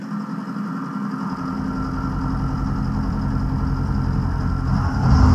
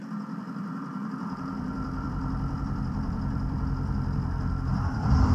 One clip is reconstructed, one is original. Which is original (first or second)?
first